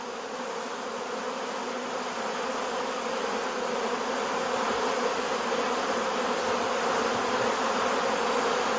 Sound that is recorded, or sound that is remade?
recorded